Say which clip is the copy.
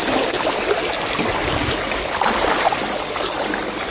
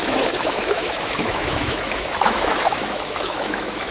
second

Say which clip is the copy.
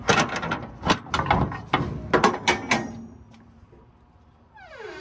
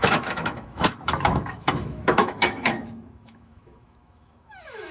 second